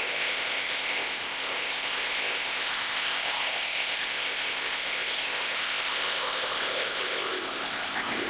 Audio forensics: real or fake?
fake